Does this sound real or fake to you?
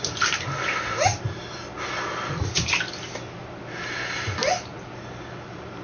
real